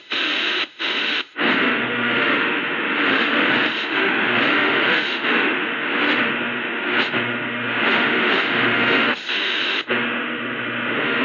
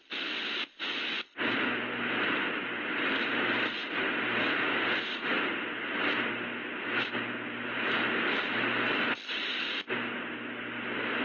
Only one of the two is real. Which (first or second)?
second